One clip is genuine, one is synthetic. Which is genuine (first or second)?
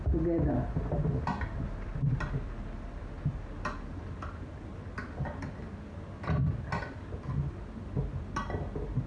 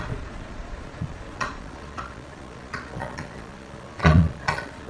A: first